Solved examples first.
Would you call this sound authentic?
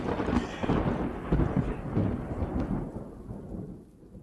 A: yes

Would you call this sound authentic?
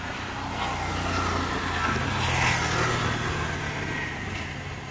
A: yes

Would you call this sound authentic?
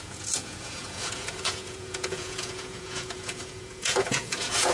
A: no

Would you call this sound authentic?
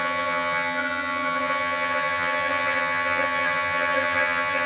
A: no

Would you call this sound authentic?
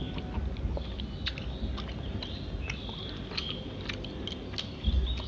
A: yes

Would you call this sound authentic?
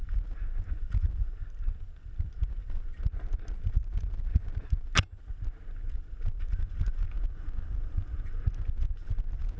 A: yes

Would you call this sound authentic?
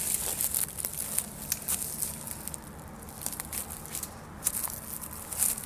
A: yes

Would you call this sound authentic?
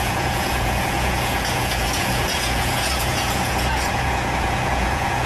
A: no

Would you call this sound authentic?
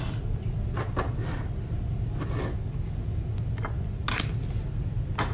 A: yes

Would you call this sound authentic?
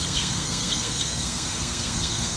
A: no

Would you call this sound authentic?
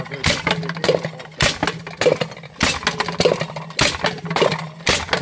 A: yes